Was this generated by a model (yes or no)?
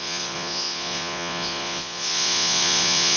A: yes